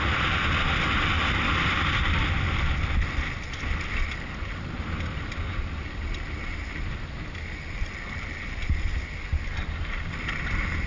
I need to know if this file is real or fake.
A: real